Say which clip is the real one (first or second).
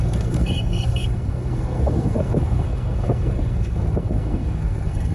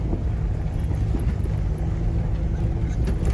second